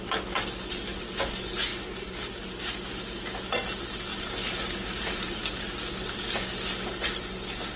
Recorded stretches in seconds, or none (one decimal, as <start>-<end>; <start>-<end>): 0.0-1.7; 2.6-4.1; 5.7-7.8